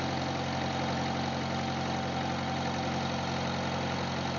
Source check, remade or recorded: recorded